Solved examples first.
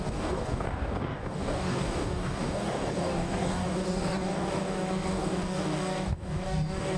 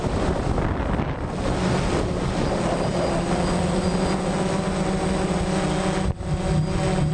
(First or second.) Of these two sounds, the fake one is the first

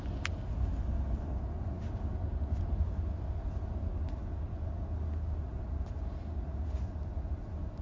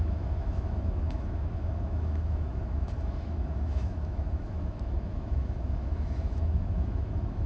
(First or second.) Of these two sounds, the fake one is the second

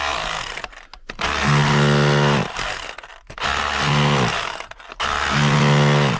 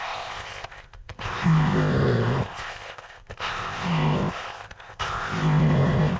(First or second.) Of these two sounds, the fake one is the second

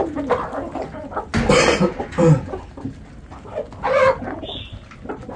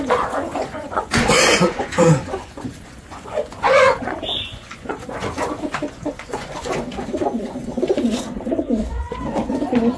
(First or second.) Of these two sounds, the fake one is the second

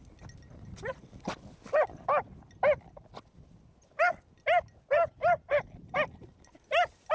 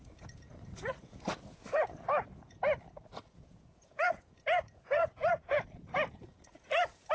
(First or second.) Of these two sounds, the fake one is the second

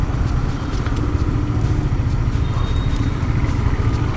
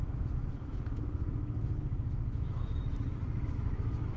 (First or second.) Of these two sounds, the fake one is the second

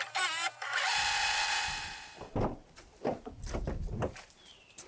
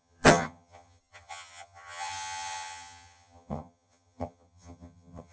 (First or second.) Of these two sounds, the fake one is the second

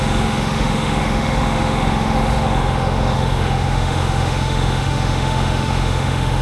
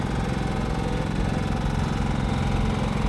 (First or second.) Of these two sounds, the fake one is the first